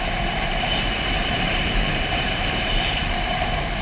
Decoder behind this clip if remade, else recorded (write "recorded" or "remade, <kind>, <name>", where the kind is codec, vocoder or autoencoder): remade, vocoder, BigVGAN v2